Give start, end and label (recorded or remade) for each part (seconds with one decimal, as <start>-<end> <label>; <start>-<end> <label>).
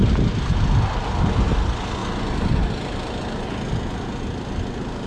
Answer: 0.0-5.1 recorded